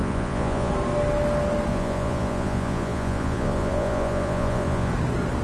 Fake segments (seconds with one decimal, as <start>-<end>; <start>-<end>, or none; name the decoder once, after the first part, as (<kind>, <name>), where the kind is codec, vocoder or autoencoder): 0.0-0.7 (vocoder, Vocos); 1.7-4.9